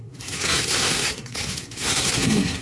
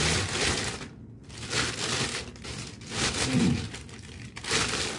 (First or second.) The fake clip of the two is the first